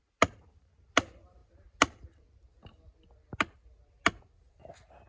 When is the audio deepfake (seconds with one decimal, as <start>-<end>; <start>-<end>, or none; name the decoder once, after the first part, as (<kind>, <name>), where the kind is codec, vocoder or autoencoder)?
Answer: none